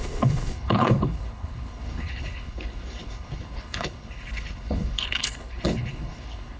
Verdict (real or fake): fake